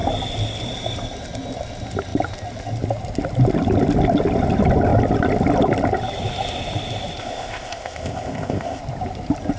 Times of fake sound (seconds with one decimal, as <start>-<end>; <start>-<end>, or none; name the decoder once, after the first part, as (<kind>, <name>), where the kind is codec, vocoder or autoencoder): 7.2-8.8 (codec, ZipCodec)